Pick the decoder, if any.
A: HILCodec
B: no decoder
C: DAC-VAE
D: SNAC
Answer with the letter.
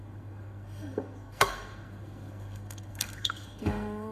D